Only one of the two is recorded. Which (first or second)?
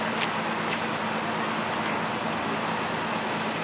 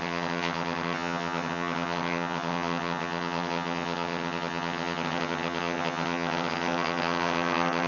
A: first